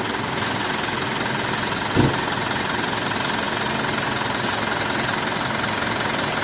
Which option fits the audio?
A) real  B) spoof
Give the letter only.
A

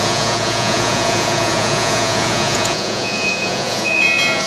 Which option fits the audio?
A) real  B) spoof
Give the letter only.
B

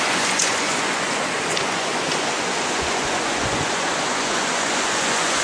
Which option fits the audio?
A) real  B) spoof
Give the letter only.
B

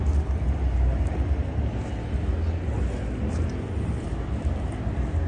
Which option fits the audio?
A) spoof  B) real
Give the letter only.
B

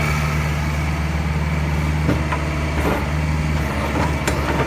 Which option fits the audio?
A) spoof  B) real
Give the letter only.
B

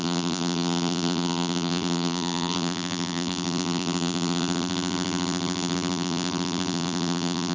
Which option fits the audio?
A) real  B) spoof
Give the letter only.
B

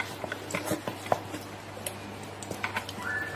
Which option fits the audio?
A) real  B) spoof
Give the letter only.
A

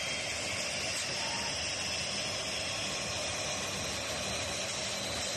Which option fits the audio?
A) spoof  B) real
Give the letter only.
B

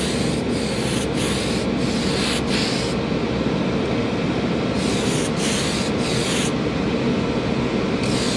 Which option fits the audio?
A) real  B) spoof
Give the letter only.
A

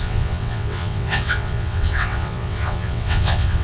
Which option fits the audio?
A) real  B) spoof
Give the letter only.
B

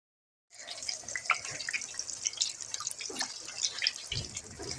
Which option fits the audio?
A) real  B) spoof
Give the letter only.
A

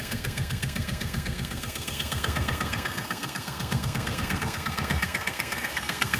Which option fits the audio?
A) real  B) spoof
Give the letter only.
B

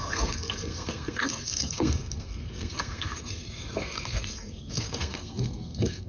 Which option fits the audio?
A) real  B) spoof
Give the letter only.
B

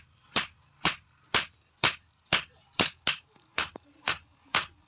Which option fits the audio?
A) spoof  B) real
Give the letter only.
B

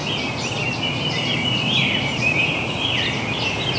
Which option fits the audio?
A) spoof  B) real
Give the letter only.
B